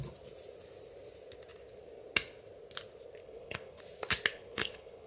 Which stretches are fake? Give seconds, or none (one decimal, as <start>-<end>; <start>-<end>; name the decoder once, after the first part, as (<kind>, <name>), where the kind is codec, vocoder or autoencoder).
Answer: 3.2-3.8 (codec, HILCodec); 4.3-5.1